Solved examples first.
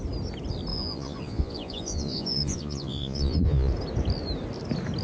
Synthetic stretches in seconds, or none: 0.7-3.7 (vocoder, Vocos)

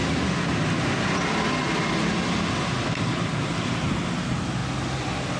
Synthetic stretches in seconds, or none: none